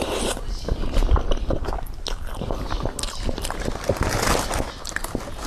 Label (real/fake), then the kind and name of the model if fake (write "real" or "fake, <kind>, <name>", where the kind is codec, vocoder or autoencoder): real